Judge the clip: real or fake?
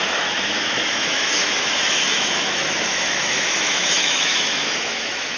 fake